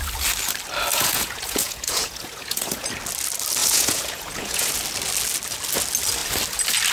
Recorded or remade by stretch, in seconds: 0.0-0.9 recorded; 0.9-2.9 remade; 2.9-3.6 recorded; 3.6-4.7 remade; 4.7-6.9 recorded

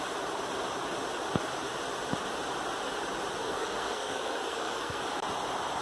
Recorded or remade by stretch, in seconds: 0.0-3.4 recorded; 3.4-5.0 remade; 5.0-5.8 recorded

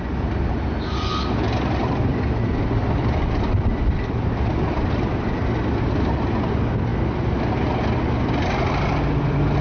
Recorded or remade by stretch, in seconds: 0.0-2.1 recorded; 2.1-5.9 remade; 5.9-9.6 recorded